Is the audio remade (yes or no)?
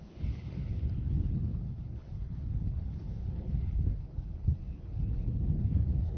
yes